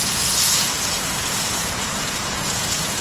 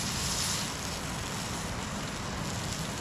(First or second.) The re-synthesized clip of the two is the first